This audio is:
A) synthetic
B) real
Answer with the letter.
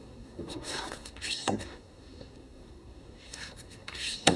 A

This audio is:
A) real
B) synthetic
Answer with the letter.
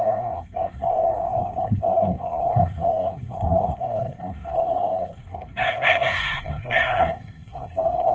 B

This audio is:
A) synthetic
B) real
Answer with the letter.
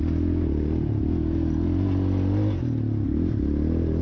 B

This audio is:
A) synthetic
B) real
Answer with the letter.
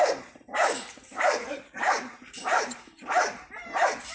A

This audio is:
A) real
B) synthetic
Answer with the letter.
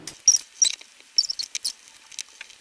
A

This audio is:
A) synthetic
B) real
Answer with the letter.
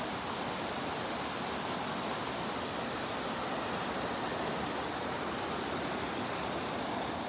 B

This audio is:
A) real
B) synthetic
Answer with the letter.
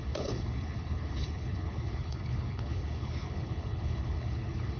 B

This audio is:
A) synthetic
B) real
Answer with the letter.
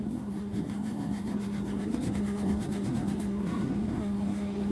A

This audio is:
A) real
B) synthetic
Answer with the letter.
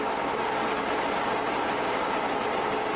A